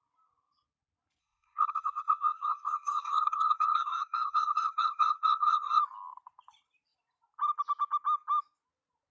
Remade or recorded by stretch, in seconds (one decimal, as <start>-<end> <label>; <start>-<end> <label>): 0.0-1.2 recorded; 1.2-5.8 remade; 5.8-9.1 recorded